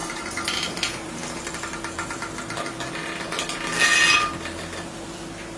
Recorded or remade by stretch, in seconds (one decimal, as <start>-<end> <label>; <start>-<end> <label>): 0.0-1.5 remade; 1.5-5.6 recorded